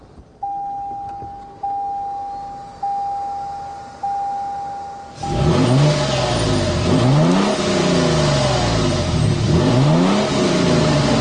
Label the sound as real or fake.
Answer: real